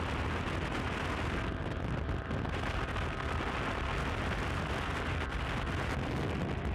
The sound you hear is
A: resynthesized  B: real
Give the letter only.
B